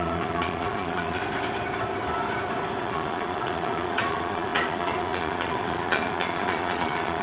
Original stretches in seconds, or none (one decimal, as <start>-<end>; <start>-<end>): 1.2-2.8